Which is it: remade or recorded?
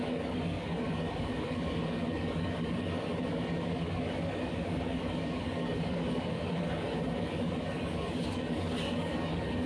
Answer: remade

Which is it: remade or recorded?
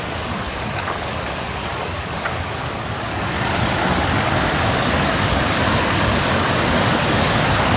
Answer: remade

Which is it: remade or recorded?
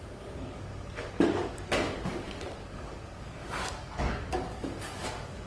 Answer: remade